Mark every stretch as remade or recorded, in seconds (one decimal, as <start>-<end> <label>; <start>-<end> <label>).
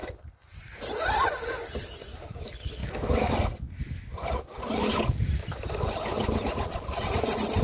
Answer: 0.0-2.8 recorded; 2.8-3.3 remade; 3.3-7.6 recorded